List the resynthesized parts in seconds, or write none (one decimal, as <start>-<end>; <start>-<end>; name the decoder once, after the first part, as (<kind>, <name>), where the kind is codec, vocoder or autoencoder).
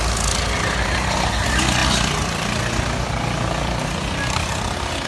none